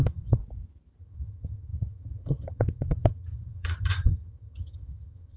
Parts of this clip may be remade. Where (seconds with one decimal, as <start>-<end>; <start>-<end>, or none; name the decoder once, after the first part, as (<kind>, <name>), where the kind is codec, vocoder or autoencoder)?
0.0-0.4 (vocoder, HiFi-GAN); 1.0-5.4